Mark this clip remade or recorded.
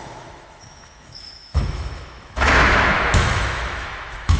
remade